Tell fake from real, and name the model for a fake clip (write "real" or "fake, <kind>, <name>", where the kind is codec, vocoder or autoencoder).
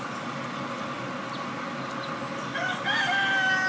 real